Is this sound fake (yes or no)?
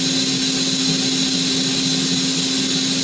no